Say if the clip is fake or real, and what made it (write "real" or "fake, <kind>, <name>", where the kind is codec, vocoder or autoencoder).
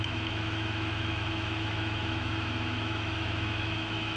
fake, autoencoder, DAC-VAE